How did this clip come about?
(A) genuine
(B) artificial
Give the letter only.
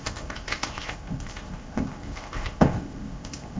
B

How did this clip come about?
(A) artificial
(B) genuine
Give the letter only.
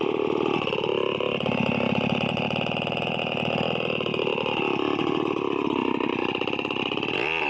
B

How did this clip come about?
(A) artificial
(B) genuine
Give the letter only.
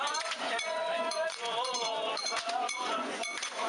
A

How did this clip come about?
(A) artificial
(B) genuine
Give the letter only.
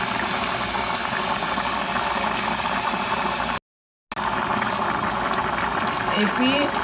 B